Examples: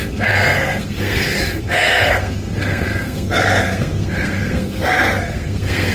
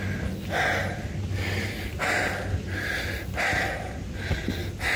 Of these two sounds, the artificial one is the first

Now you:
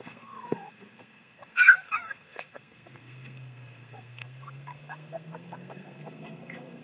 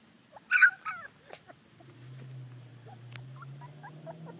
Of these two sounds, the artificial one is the first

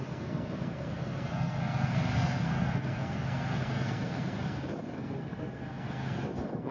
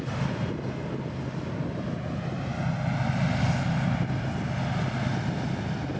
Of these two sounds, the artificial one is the first